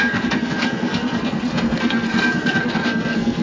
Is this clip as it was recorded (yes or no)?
no